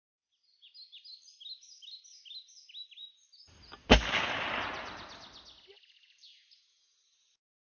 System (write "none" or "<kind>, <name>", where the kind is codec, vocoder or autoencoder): none